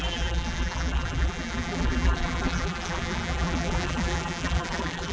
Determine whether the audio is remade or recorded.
remade